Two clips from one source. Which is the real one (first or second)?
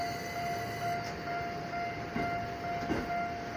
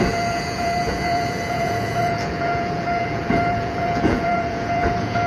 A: first